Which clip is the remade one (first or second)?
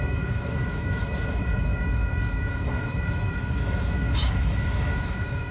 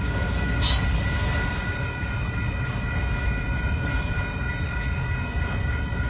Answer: first